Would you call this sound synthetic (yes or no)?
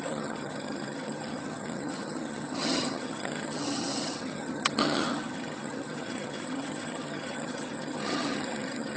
yes